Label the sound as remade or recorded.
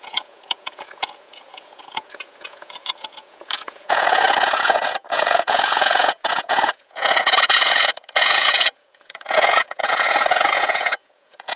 remade